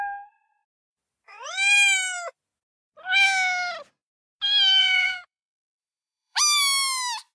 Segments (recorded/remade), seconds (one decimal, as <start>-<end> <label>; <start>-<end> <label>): 0.0-4.8 recorded; 4.8-6.4 remade; 6.4-7.3 recorded